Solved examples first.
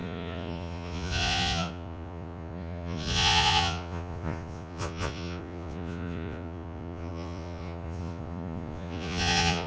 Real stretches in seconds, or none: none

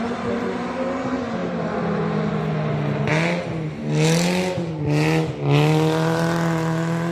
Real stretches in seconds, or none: 0.0-1.4; 2.3-3.1; 3.8-7.1

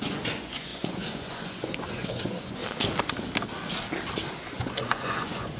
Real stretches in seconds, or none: 2.6-4.5

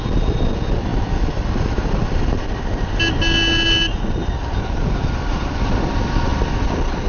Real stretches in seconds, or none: 0.0-7.1

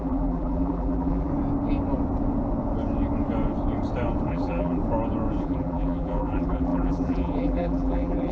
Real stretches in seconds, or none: 1.3-4.3; 4.8-5.4

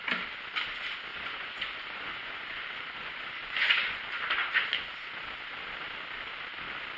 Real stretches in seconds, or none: 0.0-1.1; 4.0-4.4; 4.9-7.0

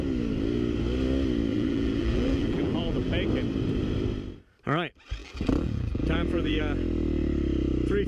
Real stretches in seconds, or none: 0.0-1.5; 3.1-5.2; 6.6-8.1

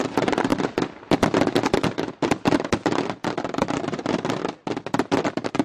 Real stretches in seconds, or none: 0.5-3.4; 4.4-5.1